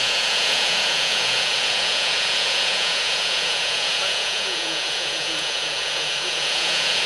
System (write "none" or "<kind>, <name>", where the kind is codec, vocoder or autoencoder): vocoder, Vocos